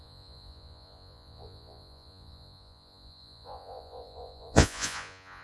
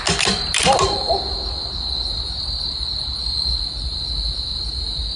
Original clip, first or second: second